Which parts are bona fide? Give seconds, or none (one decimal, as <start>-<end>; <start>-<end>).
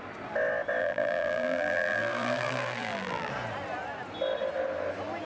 0.0-0.8; 3.3-5.2